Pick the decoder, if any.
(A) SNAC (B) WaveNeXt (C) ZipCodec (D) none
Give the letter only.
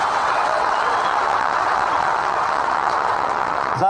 B